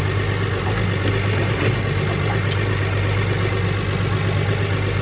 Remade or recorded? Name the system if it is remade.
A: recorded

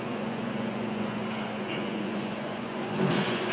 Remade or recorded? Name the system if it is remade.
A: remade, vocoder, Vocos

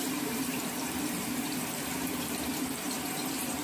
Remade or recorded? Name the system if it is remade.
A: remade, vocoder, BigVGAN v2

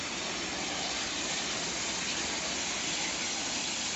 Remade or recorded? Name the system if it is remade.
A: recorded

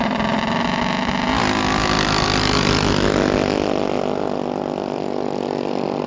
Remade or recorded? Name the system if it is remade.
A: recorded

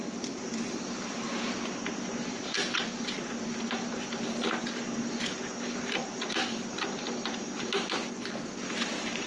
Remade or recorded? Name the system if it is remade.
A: recorded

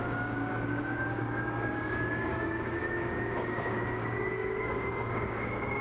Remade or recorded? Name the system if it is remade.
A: remade, codec, DAC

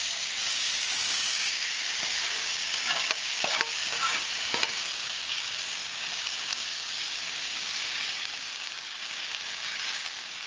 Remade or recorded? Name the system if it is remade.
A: remade, codec, DAC